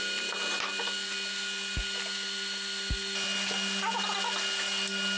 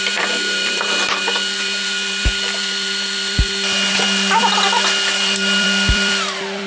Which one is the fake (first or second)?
second